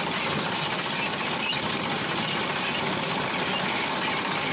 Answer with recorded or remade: recorded